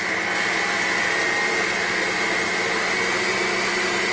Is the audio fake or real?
real